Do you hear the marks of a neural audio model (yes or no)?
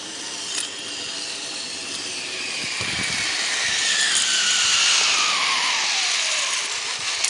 yes